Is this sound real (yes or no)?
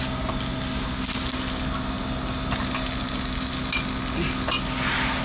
yes